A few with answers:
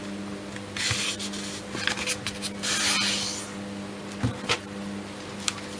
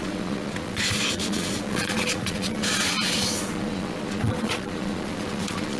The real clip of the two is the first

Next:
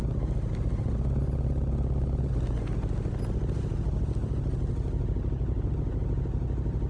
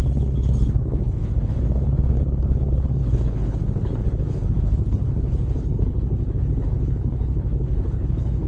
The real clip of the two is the first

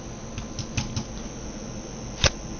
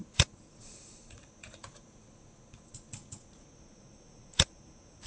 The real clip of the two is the first